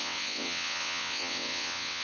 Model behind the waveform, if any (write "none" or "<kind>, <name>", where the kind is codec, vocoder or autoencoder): vocoder, WaveNeXt